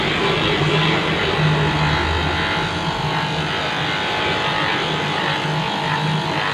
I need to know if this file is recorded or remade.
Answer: recorded